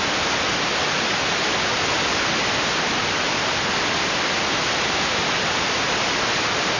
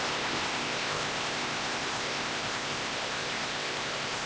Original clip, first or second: first